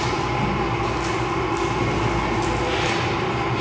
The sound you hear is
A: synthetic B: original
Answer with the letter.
B